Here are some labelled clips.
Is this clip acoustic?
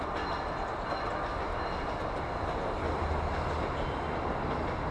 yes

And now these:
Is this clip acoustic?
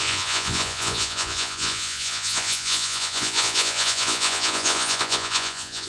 no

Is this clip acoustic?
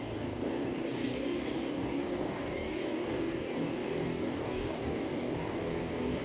no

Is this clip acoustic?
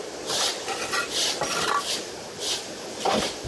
yes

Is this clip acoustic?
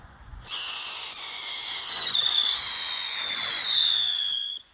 no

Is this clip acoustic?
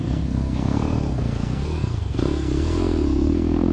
no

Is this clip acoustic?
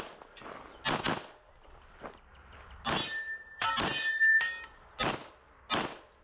yes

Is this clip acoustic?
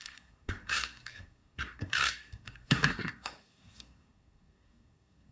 no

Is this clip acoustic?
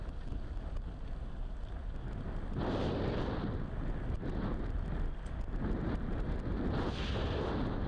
yes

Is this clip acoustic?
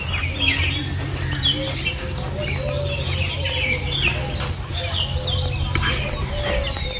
yes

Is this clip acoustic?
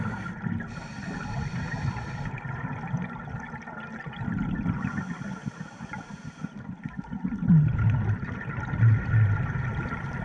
yes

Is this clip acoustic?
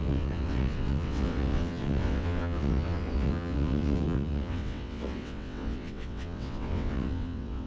no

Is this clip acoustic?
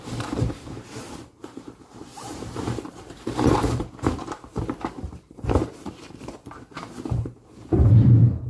no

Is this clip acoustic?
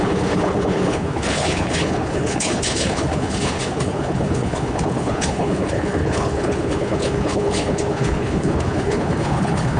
no